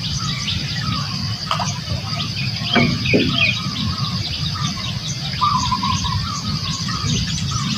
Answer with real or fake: real